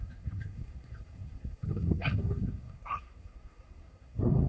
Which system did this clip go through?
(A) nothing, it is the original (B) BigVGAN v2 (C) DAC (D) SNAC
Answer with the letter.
D